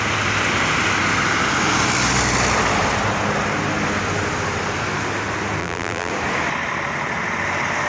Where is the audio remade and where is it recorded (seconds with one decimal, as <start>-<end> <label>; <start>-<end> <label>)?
0.0-5.6 recorded; 5.6-6.1 remade; 6.1-7.9 recorded